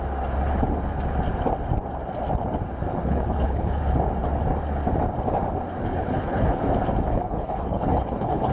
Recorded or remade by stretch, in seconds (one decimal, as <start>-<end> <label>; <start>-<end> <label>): 0.0-2.9 recorded; 2.9-3.8 remade; 3.8-5.9 recorded; 5.9-6.6 remade; 6.6-7.1 recorded; 7.1-8.5 remade